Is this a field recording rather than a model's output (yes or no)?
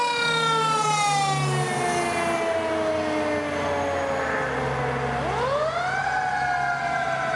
yes